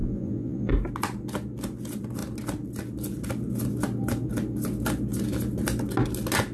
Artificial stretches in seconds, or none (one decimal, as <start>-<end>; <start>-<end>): 0.0-0.7